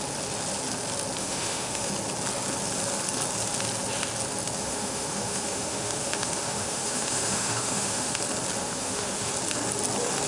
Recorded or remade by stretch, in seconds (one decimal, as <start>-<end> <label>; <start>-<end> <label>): 0.0-1.2 recorded; 1.2-1.9 remade; 1.9-4.6 recorded; 4.6-8.2 remade; 8.2-8.6 recorded; 8.6-9.3 remade; 9.3-10.3 recorded